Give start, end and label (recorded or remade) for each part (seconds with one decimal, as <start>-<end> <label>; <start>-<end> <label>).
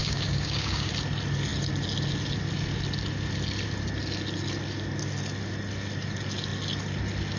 0.0-0.9 remade; 0.9-7.4 recorded